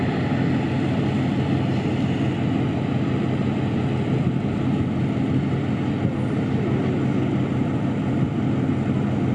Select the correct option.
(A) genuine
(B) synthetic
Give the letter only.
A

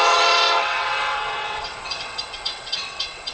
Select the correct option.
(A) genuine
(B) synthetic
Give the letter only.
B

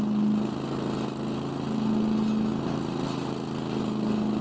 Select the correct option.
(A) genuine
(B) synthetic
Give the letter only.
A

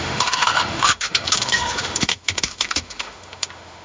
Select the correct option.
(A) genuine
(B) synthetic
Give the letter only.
B